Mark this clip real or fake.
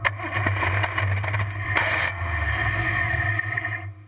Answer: real